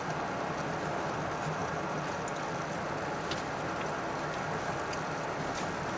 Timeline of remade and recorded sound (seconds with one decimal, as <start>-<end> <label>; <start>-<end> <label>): 0.0-6.0 recorded